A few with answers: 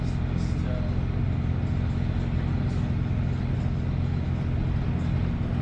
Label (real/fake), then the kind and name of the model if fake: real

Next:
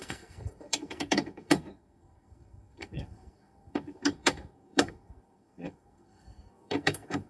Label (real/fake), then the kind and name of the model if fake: fake, codec, SNAC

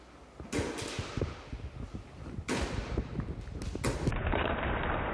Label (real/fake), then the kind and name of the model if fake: real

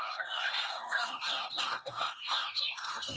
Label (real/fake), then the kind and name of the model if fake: fake, codec, SNAC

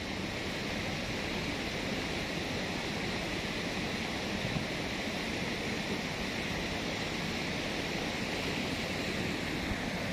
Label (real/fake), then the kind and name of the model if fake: real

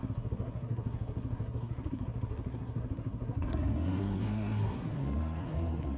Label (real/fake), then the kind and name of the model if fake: fake, codec, SNAC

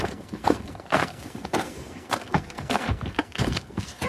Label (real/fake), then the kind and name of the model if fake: fake, codec, SNAC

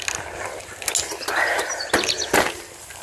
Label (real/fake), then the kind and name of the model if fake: real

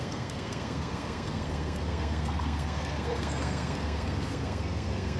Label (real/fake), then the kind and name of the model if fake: fake, codec, SNAC